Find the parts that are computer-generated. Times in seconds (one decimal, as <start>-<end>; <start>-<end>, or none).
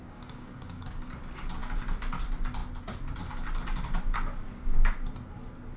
0.0-1.1